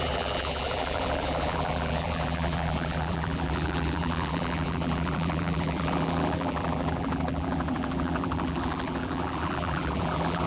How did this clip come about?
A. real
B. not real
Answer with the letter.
B